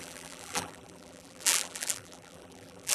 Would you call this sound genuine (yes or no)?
no